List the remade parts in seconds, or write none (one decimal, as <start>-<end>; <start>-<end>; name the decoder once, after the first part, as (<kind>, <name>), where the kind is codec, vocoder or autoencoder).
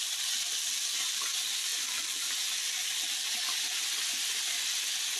none